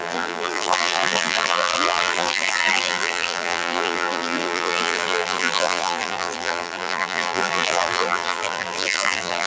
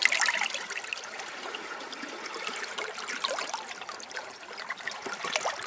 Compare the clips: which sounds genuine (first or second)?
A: second